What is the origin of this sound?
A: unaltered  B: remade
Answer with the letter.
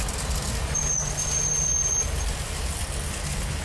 A